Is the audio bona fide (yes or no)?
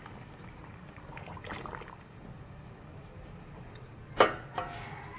no